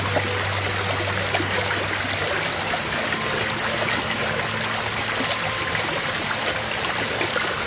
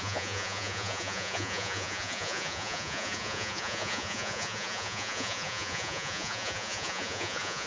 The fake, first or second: second